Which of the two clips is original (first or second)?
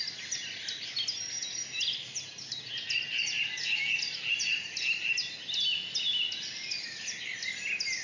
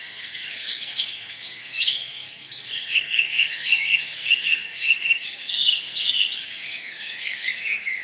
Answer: first